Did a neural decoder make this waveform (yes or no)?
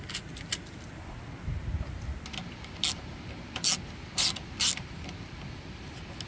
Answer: no